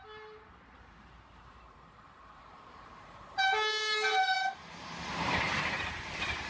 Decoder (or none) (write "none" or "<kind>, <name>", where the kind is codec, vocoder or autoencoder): vocoder, BigVGAN v2